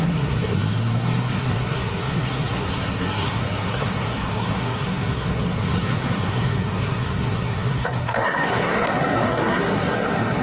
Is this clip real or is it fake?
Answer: fake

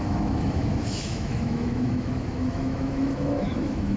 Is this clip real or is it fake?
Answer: fake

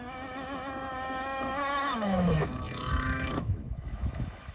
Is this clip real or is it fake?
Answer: fake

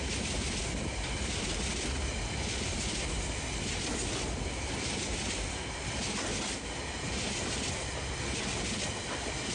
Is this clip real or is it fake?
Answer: real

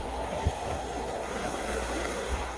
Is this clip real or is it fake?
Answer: fake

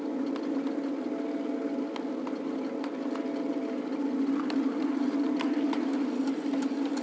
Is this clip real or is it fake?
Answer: real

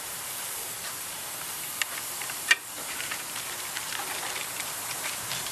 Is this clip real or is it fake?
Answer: fake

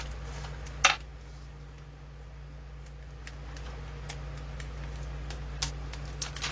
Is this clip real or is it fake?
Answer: real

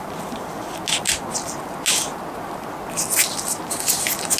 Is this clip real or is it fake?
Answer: real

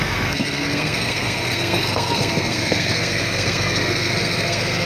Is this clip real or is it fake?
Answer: fake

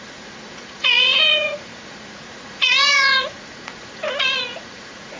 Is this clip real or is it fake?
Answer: fake